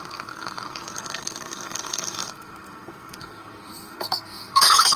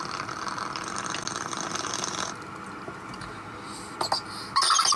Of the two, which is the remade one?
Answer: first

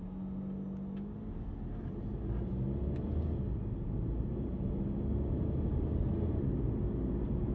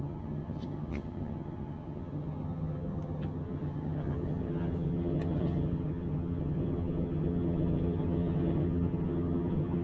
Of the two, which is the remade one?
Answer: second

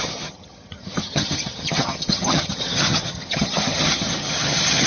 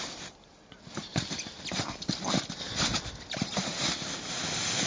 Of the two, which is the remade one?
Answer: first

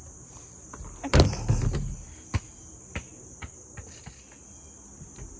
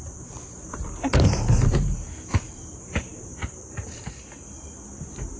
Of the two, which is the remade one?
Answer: second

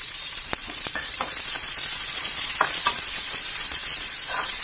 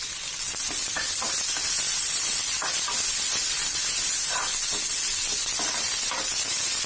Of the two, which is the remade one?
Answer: first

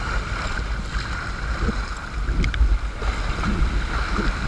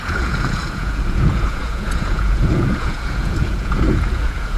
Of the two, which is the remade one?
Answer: second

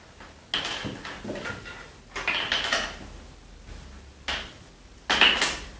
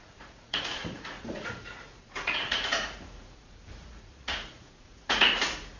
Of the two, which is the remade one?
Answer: second